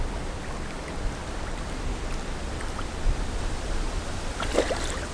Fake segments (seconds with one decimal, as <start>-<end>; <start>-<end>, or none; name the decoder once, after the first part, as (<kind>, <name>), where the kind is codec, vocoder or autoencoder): none